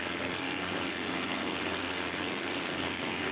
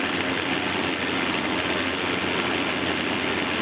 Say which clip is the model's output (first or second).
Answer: first